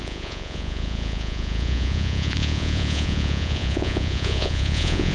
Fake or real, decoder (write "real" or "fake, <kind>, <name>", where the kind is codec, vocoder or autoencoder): fake, vocoder, Vocos